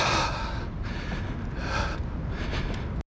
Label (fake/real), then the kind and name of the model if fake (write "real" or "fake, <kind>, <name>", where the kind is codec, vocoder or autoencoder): real